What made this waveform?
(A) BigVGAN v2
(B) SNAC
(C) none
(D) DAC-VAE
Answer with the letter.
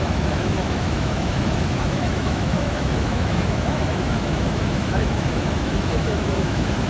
D